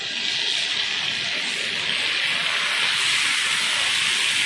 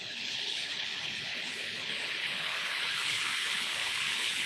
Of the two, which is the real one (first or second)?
first